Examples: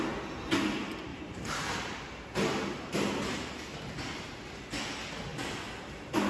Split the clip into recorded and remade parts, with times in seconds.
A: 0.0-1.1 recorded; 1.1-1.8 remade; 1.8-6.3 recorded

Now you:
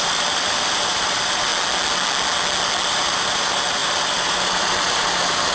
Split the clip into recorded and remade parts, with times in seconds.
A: 0.0-1.5 remade; 1.5-2.9 recorded; 2.9-5.5 remade

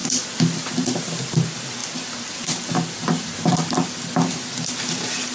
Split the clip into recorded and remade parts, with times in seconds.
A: 0.0-5.3 remade

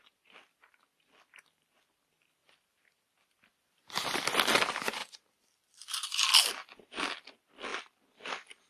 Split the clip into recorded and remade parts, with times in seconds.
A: 0.0-2.4 recorded; 2.4-4.6 remade; 4.6-5.0 recorded; 5.0-7.0 remade; 7.0-7.7 recorded; 7.7-8.7 remade

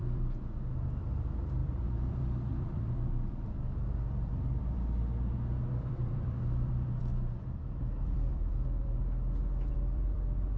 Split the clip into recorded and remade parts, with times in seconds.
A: 0.0-7.1 remade; 7.1-7.7 recorded; 7.7-9.0 remade; 9.0-9.7 recorded; 9.7-10.6 remade

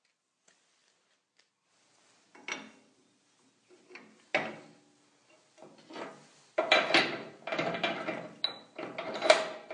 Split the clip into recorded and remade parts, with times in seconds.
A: 0.0-9.7 recorded

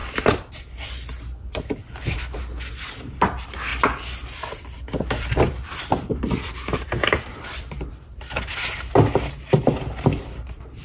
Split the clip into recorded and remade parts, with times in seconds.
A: 0.0-0.5 remade; 0.5-3.7 recorded; 3.7-8.5 remade; 8.5-10.8 recorded

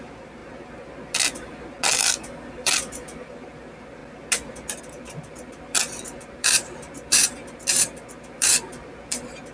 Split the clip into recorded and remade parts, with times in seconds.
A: 0.0-0.4 remade; 0.4-1.9 recorded; 1.9-4.0 remade; 4.0-4.8 recorded; 4.8-9.5 remade